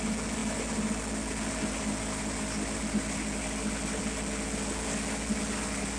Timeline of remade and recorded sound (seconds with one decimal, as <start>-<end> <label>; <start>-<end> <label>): 0.0-6.0 recorded